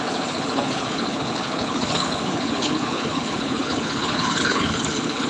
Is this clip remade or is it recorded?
remade